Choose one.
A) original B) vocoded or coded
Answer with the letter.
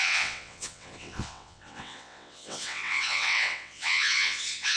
B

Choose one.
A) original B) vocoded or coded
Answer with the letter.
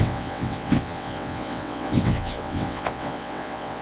B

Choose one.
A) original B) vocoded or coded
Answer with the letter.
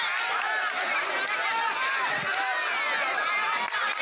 A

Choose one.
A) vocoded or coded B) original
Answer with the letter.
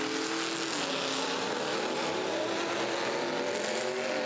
B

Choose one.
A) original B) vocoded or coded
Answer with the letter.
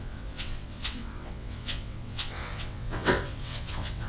B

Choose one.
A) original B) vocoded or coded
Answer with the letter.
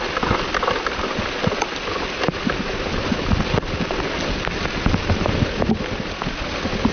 A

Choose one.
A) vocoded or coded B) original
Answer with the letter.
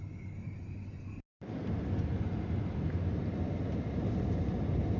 B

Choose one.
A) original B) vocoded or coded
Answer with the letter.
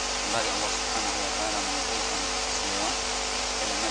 A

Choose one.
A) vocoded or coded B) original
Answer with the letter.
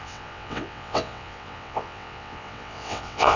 A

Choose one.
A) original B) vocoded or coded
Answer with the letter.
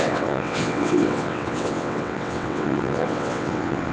B